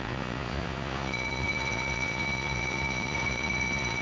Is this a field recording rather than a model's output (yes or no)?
no